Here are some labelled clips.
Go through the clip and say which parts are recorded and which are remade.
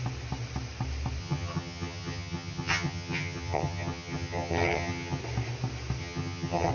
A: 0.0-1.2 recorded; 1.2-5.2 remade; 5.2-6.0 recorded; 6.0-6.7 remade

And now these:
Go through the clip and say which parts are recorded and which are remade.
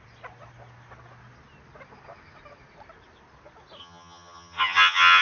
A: 0.0-3.8 recorded; 3.8-5.2 remade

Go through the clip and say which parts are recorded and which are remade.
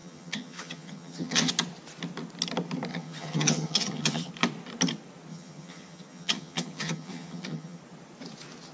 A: 0.0-1.5 remade; 1.5-2.9 recorded; 2.9-4.3 remade; 4.3-5.3 recorded; 5.3-7.8 remade; 7.8-8.7 recorded